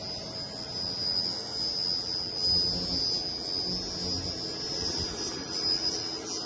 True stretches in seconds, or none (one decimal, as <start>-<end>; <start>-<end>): 0.0-6.5